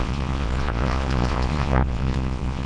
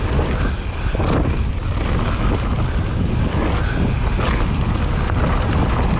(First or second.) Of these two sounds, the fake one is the first